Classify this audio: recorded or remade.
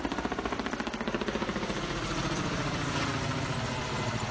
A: recorded